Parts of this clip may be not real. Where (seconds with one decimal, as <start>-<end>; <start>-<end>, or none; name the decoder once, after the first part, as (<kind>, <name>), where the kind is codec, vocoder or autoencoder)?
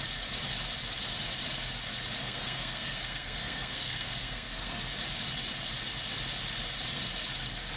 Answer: 2.2-4.8 (codec, SNAC)